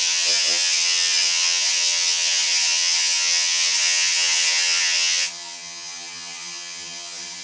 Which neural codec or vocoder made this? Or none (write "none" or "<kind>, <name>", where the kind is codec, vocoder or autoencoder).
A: vocoder, HiFi-GAN